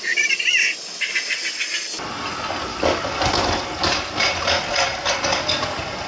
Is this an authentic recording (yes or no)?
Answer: yes